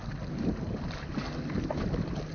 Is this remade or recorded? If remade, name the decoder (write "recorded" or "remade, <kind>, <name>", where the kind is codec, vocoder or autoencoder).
recorded